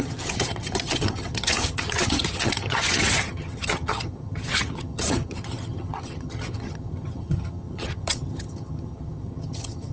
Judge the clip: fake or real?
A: fake